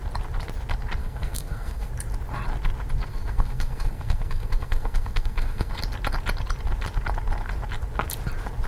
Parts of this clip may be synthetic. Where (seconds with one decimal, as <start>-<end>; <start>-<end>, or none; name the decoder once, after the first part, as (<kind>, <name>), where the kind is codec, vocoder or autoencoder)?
1.0-1.9 (codec, SNAC); 3.1-5.8